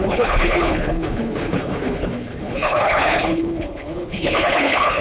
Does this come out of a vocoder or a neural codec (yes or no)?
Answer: yes